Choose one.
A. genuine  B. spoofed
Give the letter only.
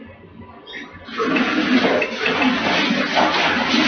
A